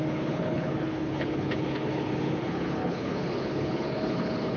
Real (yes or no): no